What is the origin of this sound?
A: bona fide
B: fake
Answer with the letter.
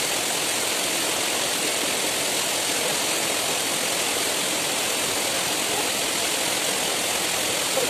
A